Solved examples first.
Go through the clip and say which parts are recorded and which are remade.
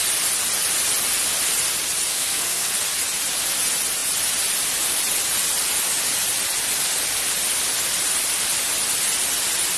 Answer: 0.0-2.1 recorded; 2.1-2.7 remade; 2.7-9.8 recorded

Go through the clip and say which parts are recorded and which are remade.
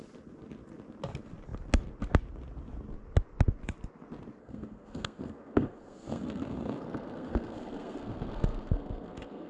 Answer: 0.0-4.4 recorded; 4.4-9.5 remade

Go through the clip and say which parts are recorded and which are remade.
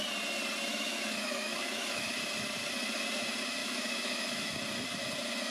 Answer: 0.0-0.7 recorded; 0.7-2.1 remade; 2.1-3.6 recorded; 3.6-4.6 remade; 4.6-5.5 recorded